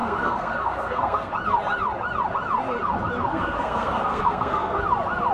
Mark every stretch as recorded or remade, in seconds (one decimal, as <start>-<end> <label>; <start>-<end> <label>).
0.0-1.3 remade; 1.3-3.3 recorded; 3.3-4.8 remade; 4.8-5.3 recorded